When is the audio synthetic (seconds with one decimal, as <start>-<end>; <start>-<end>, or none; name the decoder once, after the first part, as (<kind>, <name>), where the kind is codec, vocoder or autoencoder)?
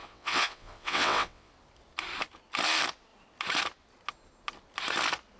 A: 0.0-1.5 (vocoder, WaveNeXt)